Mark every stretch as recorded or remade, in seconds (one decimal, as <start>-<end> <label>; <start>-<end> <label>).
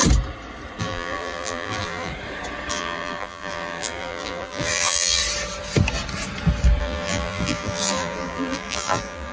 0.0-0.8 recorded; 0.8-2.1 remade; 2.1-2.7 recorded; 2.7-5.2 remade; 5.2-6.8 recorded; 6.8-9.3 remade